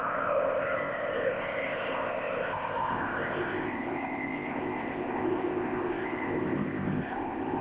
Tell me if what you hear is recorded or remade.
remade